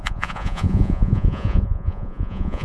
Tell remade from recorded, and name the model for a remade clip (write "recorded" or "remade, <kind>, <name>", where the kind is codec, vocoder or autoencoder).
remade, vocoder, Vocos